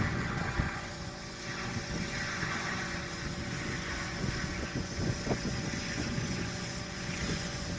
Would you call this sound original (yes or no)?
no